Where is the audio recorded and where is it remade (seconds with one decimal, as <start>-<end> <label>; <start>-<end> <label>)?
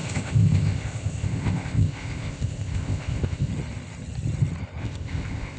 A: 0.0-3.5 remade; 3.5-4.8 recorded; 4.8-5.6 remade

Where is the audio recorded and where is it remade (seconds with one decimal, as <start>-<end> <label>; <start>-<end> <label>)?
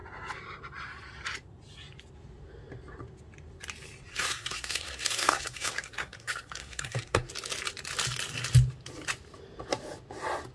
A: 0.0-4.1 recorded; 4.1-7.3 remade; 7.3-10.5 recorded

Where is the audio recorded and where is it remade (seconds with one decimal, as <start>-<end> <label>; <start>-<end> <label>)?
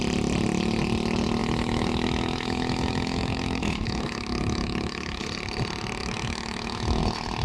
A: 0.0-1.4 recorded; 1.4-5.2 remade; 5.2-6.0 recorded; 6.0-7.0 remade; 7.0-7.4 recorded